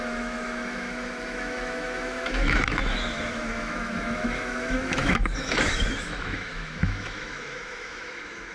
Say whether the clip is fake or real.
fake